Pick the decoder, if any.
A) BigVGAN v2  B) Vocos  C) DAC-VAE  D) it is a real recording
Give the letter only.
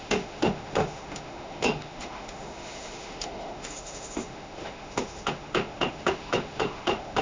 C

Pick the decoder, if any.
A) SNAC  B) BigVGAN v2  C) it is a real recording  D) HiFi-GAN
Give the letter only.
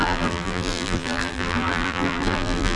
B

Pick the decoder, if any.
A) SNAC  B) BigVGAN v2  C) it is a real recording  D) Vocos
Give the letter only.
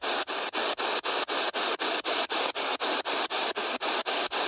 C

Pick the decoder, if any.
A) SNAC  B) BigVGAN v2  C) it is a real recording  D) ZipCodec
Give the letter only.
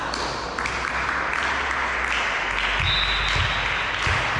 C